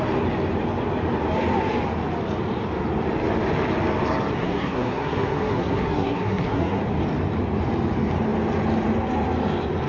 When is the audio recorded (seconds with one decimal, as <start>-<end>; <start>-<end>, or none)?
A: 0.0-4.4; 6.8-9.9